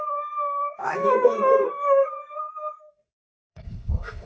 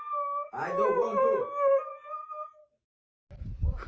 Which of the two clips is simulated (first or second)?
first